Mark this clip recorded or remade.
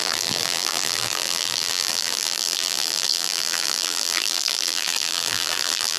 remade